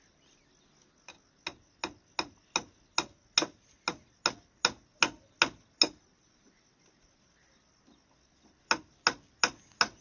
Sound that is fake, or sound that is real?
real